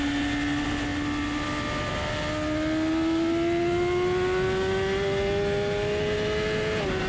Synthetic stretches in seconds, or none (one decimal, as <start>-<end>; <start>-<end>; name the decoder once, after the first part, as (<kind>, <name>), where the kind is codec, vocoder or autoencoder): none